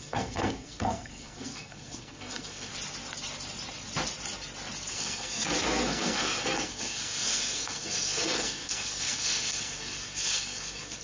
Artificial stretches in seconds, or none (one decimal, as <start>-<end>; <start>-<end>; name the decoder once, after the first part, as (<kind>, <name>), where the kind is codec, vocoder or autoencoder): 0.0-2.7 (codec, SNAC); 4.9-11.0